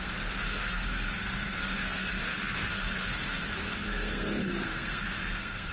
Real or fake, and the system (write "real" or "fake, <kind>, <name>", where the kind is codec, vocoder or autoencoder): fake, codec, SNAC